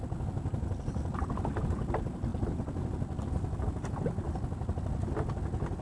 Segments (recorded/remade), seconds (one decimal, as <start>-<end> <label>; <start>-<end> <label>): 0.0-5.8 recorded